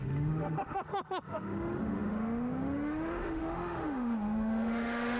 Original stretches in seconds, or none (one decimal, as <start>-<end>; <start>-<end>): none